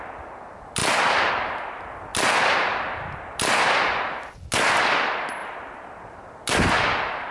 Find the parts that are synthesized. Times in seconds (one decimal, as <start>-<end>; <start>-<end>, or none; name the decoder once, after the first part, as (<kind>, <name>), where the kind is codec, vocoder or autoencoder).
none